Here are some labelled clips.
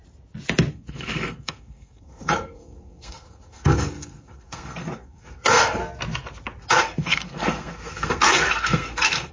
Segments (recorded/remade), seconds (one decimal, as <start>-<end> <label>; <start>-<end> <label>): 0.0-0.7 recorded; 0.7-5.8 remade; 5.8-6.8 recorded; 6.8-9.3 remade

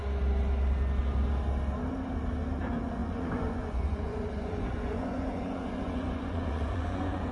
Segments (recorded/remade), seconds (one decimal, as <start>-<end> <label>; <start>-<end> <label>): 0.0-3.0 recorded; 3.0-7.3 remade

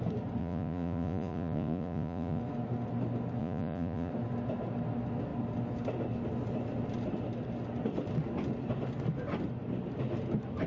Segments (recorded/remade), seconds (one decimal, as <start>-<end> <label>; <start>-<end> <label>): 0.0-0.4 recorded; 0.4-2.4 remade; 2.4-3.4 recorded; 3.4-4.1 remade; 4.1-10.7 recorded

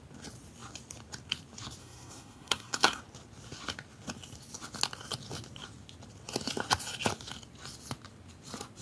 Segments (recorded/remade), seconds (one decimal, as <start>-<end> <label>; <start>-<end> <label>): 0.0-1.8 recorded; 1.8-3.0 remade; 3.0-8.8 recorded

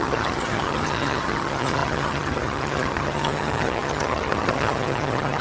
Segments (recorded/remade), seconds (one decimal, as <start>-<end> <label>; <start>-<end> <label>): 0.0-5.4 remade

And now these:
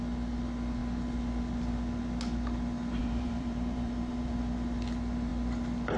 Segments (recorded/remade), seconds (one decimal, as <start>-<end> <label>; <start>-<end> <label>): 0.0-3.0 recorded; 3.0-4.3 remade; 4.3-6.0 recorded

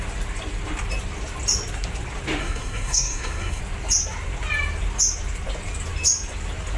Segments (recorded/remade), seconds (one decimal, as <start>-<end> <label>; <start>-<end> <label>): 0.0-2.4 recorded; 2.4-3.6 remade; 3.6-6.8 recorded